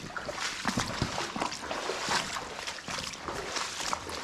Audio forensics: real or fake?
real